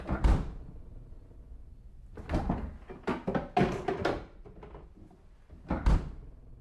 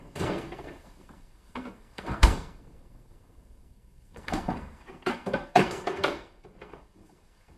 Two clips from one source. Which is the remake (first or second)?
second